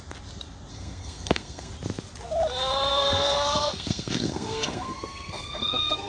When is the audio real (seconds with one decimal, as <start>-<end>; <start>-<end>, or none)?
0.0-0.7; 1.7-2.9